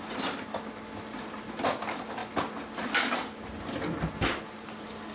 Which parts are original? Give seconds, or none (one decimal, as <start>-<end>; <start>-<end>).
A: 0.0-5.1

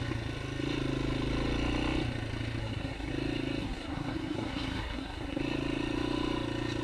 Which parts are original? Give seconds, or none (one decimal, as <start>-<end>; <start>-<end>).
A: 0.0-2.6; 3.1-3.6; 5.4-6.8

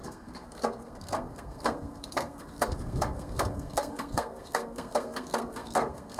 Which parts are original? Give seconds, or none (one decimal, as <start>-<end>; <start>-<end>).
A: none

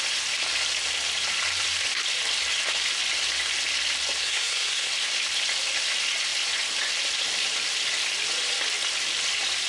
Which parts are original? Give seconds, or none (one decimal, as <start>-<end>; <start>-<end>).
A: 0.0-4.2; 4.9-9.7